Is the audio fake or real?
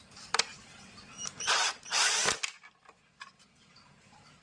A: fake